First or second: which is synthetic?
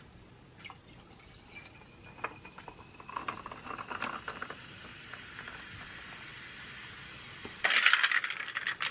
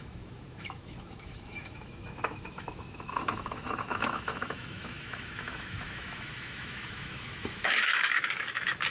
second